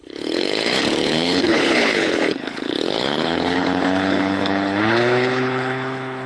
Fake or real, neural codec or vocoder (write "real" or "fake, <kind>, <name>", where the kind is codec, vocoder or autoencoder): fake, codec, HILCodec